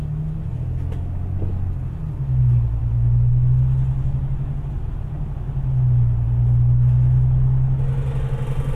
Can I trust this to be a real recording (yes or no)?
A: yes